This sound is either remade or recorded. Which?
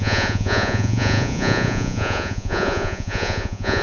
remade